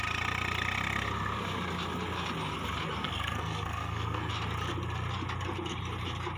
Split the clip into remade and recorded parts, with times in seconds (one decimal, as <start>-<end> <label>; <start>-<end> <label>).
0.0-3.0 recorded; 3.0-4.3 remade; 4.3-6.4 recorded